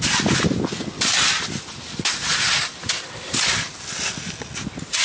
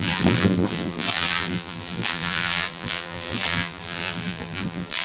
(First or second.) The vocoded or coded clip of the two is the second